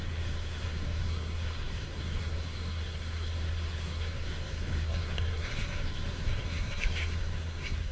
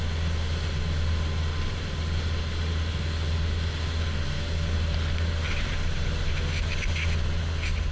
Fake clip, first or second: first